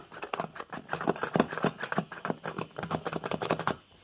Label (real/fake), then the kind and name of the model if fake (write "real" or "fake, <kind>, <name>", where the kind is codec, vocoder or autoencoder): real